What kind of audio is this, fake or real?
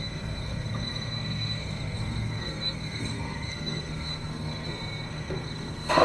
fake